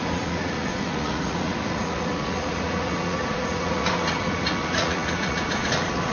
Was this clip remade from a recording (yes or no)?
yes